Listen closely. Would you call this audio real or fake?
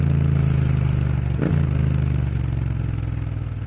real